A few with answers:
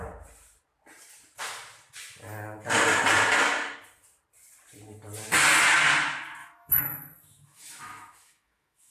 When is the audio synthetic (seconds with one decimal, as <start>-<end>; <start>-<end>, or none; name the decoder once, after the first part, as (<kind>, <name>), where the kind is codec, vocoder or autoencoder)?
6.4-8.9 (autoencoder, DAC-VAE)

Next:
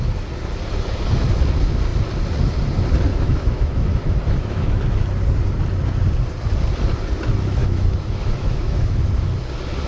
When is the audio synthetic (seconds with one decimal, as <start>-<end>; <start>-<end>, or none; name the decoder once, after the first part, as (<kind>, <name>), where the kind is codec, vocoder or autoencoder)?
3.1-4.8 (autoencoder, DAC-VAE); 7.6-9.0

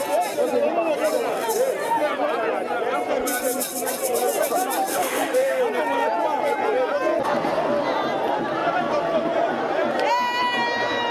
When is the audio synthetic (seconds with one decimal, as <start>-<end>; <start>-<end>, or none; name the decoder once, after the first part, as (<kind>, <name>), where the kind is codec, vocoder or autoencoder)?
4.9-5.6 (autoencoder, DAC-VAE)

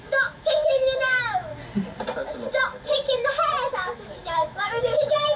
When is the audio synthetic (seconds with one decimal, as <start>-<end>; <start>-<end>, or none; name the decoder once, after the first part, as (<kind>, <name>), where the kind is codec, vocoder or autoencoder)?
0.0-1.5 (autoencoder, DAC-VAE); 3.7-5.4

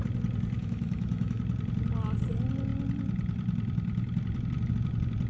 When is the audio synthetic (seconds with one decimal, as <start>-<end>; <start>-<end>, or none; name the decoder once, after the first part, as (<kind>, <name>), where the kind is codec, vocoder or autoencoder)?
0.6-1.4 (autoencoder, DAC-VAE)

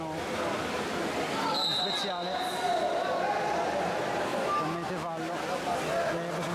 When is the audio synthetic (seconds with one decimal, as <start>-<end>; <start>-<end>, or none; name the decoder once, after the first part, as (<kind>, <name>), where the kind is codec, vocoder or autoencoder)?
none

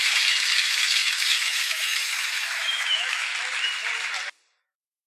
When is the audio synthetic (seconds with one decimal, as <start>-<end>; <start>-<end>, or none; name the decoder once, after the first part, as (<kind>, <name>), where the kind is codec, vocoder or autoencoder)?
0.0-3.3 (autoencoder, DAC-VAE); 4.6-5.1

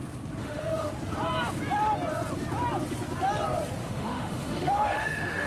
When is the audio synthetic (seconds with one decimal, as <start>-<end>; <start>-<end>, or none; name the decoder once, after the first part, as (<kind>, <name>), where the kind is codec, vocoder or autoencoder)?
0.4-0.9 (autoencoder, DAC-VAE); 3.8-5.5